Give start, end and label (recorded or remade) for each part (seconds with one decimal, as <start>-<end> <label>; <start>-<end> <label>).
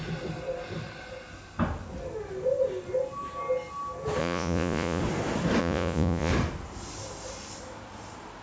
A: 0.0-4.2 recorded; 4.2-5.0 remade; 5.0-5.6 recorded; 5.6-6.3 remade; 6.3-8.4 recorded